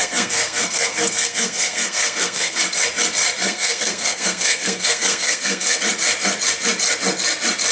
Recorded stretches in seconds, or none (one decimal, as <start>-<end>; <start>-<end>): 2.6-3.4; 5.8-7.7